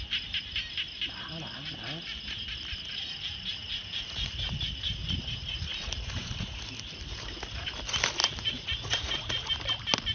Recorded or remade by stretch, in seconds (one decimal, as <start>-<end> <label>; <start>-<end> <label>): 0.0-3.6 recorded; 3.6-4.5 remade; 4.5-5.0 recorded; 5.0-6.6 remade; 6.6-8.2 recorded; 8.2-9.5 remade; 9.5-10.1 recorded